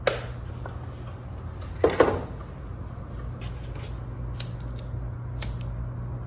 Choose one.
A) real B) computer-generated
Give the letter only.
A